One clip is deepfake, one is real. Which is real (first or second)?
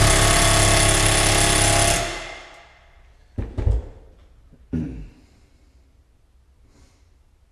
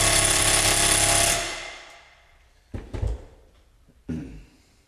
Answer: first